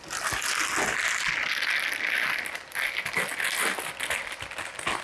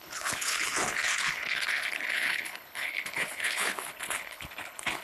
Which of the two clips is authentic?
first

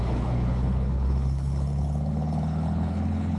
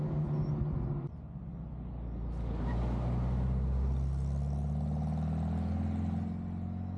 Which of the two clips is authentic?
second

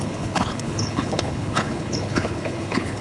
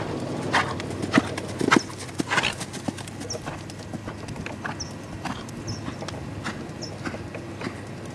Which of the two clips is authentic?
second